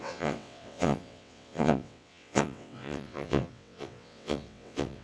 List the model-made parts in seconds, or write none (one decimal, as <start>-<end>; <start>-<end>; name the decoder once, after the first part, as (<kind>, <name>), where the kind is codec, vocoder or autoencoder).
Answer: 0.0-5.0 (vocoder, WaveNeXt)